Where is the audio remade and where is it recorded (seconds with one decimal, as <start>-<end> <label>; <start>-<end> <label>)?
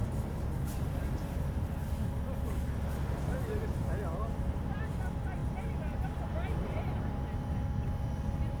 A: 0.0-8.6 remade